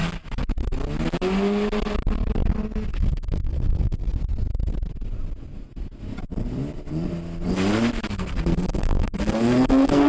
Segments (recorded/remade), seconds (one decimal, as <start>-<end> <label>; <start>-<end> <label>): 0.0-2.9 recorded; 2.9-4.0 remade; 4.0-8.1 recorded; 8.1-10.1 remade